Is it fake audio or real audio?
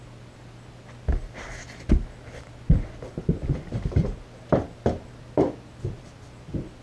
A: real